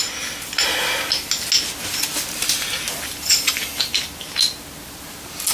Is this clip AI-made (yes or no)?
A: no